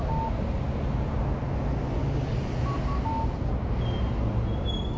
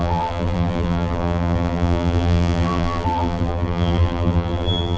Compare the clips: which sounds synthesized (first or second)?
second